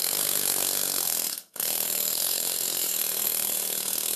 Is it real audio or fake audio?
fake